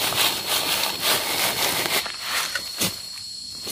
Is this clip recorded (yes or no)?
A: yes